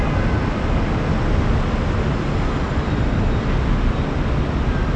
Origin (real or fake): real